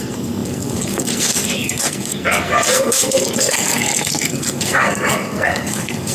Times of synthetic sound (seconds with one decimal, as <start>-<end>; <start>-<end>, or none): 0.0-6.1